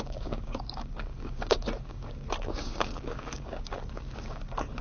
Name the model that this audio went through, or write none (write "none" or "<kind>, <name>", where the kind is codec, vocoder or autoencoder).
codec, DAC